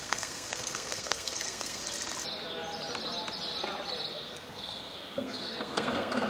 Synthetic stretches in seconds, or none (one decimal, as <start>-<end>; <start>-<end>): 0.0-1.8; 4.1-6.3